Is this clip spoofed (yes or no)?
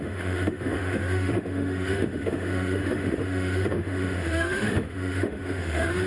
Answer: yes